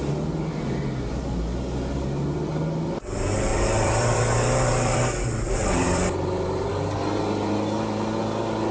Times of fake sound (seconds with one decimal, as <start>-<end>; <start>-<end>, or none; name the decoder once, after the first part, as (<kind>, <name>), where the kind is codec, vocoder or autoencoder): 3.5-6.7 (vocoder, BigVGAN v2)